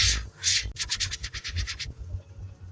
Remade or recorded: recorded